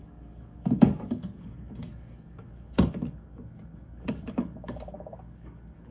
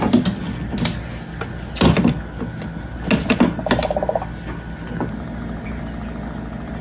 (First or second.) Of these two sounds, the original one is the second